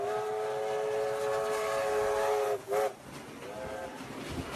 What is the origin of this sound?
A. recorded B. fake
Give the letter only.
A